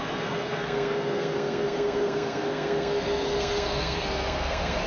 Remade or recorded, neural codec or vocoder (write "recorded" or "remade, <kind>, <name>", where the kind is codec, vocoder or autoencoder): remade, codec, SNAC